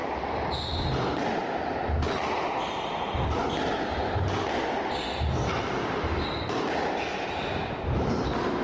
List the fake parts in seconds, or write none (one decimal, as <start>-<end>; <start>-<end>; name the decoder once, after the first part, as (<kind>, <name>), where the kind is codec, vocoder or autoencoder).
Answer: none